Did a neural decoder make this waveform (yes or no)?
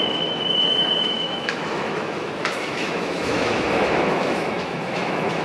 yes